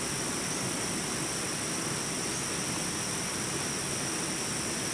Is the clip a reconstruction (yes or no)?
no